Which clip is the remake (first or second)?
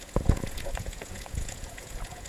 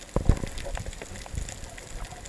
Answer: first